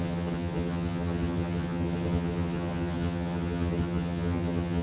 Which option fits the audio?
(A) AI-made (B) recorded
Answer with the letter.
A